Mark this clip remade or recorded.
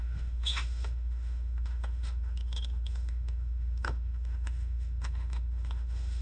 remade